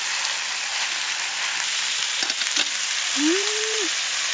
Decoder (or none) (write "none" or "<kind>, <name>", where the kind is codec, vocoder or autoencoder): vocoder, BigVGAN v2